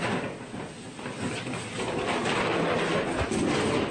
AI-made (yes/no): no